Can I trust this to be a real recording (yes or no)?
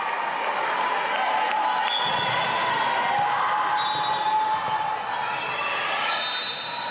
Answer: yes